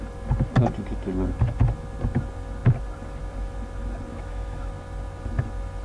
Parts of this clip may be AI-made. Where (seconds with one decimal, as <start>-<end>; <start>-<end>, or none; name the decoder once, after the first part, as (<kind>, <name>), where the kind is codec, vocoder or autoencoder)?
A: 4.1-4.7 (autoencoder, DAC-VAE)